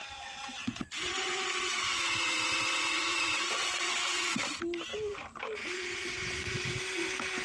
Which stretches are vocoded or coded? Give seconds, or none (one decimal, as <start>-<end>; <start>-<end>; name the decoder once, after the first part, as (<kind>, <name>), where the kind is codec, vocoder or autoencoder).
0.0-4.4 (vocoder, WaveNeXt); 5.6-6.8